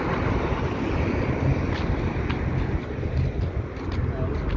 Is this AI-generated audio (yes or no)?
no